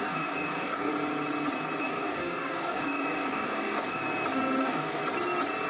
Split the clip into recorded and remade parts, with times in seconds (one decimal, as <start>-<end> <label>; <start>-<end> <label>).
0.0-0.9 remade; 0.9-1.8 recorded; 1.8-4.0 remade; 4.0-4.6 recorded; 4.6-5.0 remade; 5.0-5.7 recorded